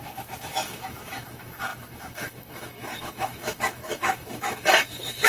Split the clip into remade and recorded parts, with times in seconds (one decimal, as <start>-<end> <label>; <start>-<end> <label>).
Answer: 0.0-5.3 remade

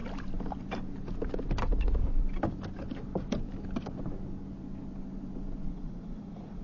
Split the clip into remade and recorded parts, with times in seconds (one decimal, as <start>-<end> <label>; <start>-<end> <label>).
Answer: 0.0-5.7 recorded; 5.7-6.6 remade

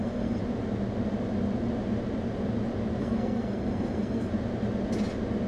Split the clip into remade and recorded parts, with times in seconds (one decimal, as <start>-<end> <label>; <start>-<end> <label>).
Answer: 0.0-0.4 remade; 0.4-3.0 recorded; 3.0-4.3 remade; 4.3-5.5 recorded

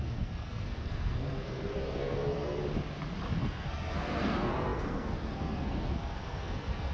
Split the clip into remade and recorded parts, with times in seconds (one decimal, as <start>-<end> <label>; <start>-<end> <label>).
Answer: 0.0-2.6 remade; 2.6-3.4 recorded; 3.4-6.9 remade

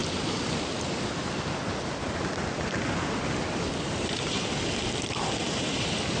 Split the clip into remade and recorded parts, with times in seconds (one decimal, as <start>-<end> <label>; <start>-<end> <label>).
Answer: 0.0-6.2 recorded

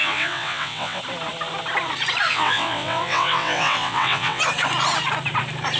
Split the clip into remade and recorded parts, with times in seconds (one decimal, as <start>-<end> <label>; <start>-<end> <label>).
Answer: 0.0-1.0 remade; 1.0-2.3 recorded; 2.3-4.4 remade; 4.4-5.8 recorded

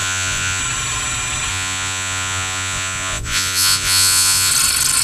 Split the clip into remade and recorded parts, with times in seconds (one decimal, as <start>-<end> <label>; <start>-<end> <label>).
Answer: 0.0-0.6 remade; 0.6-1.5 recorded; 1.5-4.5 remade; 4.5-5.0 recorded